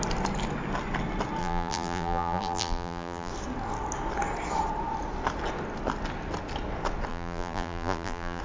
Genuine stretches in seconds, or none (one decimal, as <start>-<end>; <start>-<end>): 0.0-1.4; 3.3-7.1